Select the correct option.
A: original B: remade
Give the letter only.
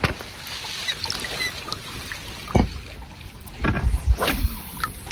A